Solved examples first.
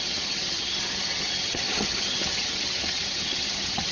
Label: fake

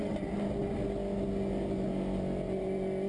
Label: real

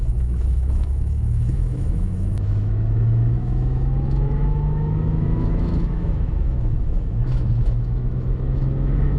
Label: fake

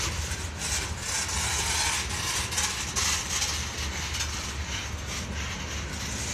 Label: real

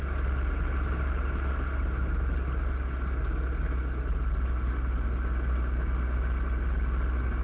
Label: real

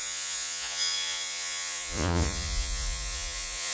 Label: fake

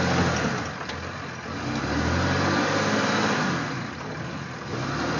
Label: real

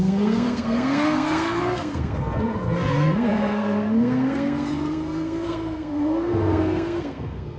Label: fake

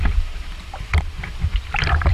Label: fake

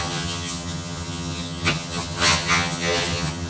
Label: fake